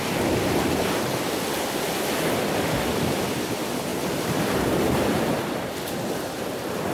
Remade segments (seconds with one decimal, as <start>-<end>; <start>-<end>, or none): 3.9-5.4